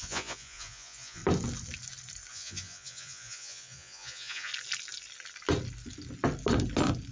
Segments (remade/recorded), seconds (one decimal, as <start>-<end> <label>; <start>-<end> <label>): 0.0-1.2 remade; 1.2-2.3 recorded; 2.3-4.5 remade; 4.5-7.1 recorded